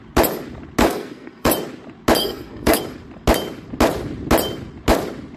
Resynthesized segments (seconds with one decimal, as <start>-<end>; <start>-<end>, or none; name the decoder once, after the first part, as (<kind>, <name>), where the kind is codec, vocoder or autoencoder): 0.8-1.5 (codec, SNAC); 2.2-2.8